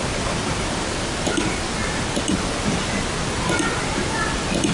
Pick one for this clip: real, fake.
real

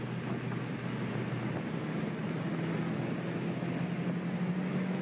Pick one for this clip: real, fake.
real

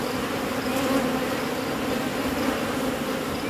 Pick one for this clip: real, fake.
real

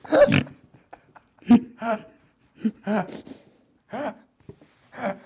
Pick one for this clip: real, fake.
real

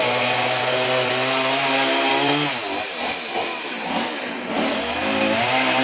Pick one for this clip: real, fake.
real